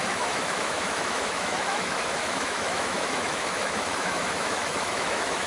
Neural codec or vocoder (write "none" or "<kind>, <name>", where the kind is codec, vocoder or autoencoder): autoencoder, DAC-VAE